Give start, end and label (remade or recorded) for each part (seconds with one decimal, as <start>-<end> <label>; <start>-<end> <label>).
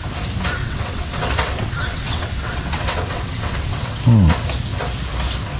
0.0-0.6 recorded; 0.6-4.0 remade; 4.0-5.6 recorded